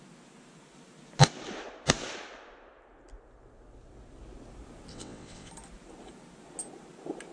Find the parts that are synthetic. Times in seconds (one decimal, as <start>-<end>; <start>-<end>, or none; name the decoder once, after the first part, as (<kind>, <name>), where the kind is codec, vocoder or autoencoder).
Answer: 4.9-5.5 (vocoder, WaveNeXt)